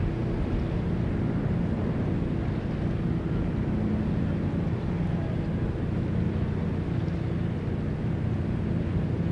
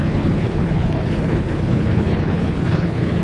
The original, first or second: first